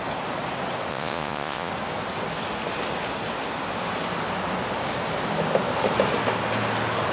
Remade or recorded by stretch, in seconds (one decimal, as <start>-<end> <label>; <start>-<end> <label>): 0.0-0.9 recorded; 0.9-1.7 remade; 1.7-7.1 recorded